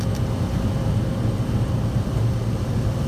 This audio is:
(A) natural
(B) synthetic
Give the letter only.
A